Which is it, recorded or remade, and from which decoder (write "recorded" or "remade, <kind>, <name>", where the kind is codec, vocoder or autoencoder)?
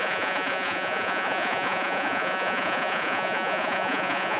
remade, vocoder, Vocos